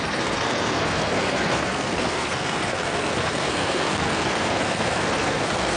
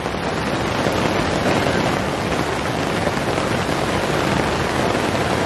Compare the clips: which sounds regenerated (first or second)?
first